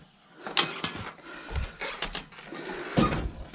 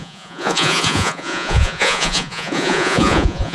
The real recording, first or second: first